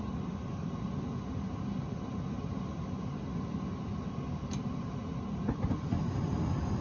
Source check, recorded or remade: recorded